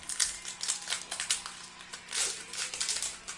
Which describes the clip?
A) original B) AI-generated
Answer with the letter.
A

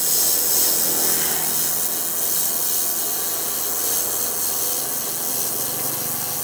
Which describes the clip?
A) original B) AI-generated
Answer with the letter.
A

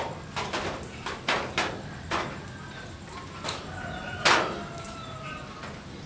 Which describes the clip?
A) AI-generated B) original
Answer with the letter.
B